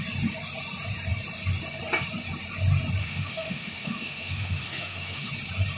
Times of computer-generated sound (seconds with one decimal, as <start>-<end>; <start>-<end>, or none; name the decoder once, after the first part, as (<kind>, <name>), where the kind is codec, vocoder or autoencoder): 3.0-5.3 (autoencoder, DAC-VAE)